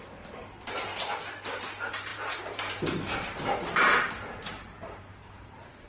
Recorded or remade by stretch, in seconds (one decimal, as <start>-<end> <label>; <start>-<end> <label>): 0.0-0.9 remade; 0.9-1.6 recorded; 1.6-5.9 remade